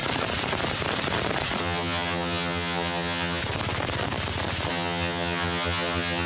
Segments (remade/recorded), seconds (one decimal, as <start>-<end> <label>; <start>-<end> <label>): 0.0-1.6 recorded; 1.6-3.4 remade; 3.4-4.7 recorded; 4.7-6.3 remade